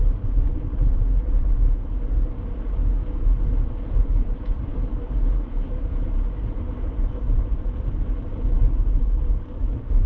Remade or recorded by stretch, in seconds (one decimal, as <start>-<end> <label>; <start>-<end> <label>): 0.0-10.1 remade